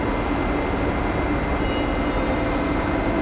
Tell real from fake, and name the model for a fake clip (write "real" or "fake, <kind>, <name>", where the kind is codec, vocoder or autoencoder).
real